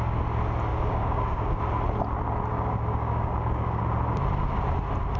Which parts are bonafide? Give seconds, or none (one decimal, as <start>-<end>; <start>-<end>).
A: 0.0-0.7; 1.6-2.5; 3.8-5.2

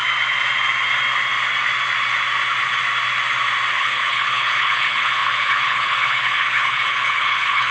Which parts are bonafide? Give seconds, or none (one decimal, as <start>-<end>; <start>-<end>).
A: 0.0-3.7